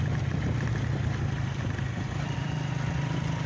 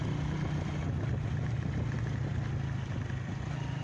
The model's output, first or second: first